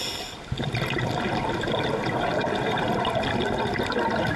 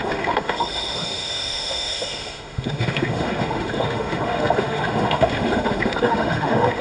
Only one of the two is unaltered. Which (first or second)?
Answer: first